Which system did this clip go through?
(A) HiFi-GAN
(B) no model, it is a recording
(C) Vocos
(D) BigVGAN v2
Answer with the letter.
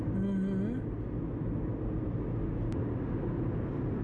B